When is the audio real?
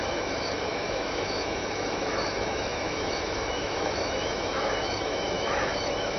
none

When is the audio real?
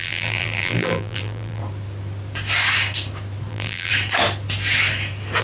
1.6-3.5; 3.9-5.4